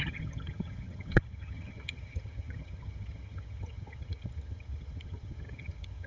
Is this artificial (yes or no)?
yes